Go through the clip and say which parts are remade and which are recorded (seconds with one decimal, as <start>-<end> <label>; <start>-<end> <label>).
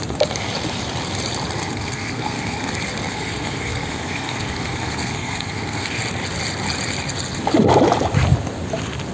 0.0-1.6 recorded; 1.6-2.7 remade; 2.7-3.1 recorded; 3.1-6.0 remade; 6.0-9.1 recorded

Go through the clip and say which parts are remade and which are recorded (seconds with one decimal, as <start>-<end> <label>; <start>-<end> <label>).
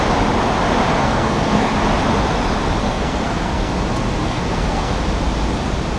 0.0-1.0 recorded; 1.0-1.7 remade; 1.7-2.8 recorded; 2.8-3.7 remade; 3.7-4.2 recorded; 4.2-4.9 remade; 4.9-6.0 recorded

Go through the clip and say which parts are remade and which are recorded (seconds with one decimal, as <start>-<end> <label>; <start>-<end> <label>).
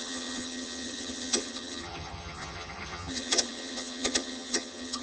0.0-5.0 remade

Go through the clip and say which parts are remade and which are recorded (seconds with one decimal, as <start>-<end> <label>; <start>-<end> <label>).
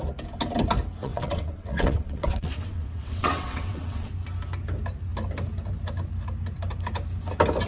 0.0-1.0 recorded; 1.0-4.1 remade; 4.1-7.7 recorded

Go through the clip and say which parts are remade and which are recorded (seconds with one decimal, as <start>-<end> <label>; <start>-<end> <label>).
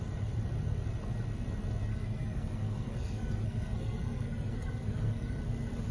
0.0-1.9 recorded; 1.9-5.4 remade; 5.4-5.9 recorded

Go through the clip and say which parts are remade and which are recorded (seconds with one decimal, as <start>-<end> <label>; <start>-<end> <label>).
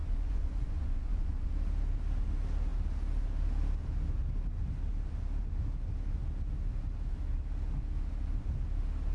0.0-1.5 remade; 1.5-9.1 recorded